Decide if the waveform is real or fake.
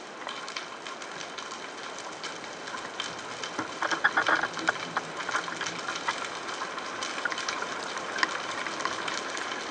real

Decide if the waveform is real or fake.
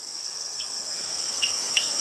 fake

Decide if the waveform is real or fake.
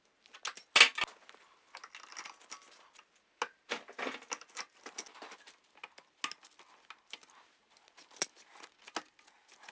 real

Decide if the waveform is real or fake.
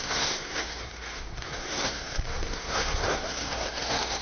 fake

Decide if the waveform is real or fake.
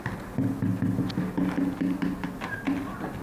real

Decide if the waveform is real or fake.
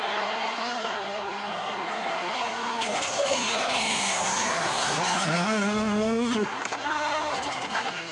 fake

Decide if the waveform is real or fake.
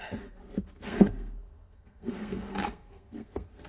fake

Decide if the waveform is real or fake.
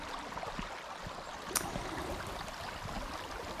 real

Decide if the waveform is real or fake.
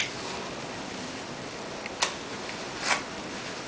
real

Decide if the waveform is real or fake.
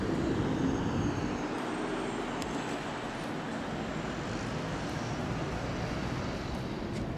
real